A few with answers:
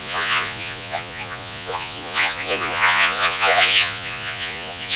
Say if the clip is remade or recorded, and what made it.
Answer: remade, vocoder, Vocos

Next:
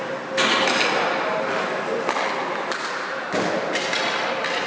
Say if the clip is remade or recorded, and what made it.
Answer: recorded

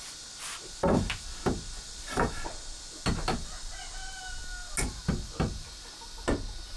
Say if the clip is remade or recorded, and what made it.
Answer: recorded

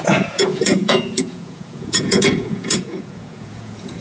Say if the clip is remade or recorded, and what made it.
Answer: remade, vocoder, Vocos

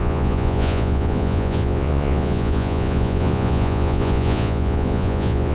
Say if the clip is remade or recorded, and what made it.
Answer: remade, vocoder, Vocos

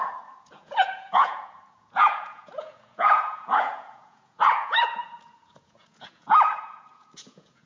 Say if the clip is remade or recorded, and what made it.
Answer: remade, vocoder, Vocos